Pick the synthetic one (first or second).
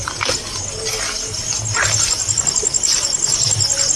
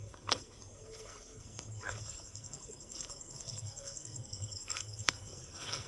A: second